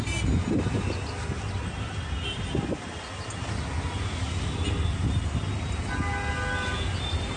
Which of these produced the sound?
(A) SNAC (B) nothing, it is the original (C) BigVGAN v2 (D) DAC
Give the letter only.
B